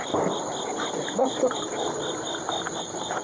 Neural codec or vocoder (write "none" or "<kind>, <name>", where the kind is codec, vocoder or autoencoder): none